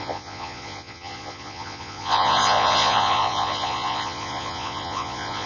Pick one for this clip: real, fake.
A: fake